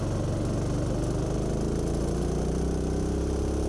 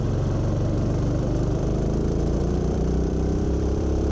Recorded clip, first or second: first